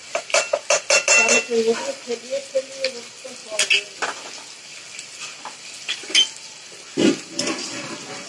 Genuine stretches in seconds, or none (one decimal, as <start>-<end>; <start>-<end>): 0.0-8.3